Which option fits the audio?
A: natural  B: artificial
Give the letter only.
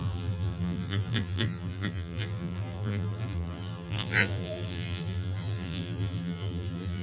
B